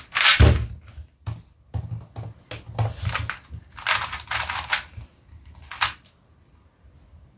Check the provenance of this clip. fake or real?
real